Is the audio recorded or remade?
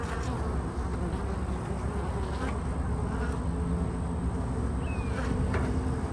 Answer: recorded